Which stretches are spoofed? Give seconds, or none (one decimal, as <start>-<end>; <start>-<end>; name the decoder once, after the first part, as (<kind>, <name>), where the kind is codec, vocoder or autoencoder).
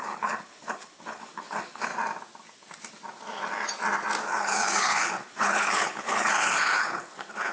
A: 0.0-1.9 (codec, HILCodec); 4.2-7.5